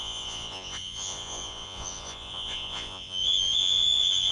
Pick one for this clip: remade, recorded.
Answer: remade